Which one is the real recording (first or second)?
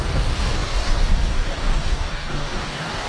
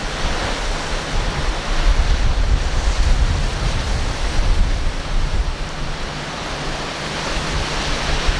second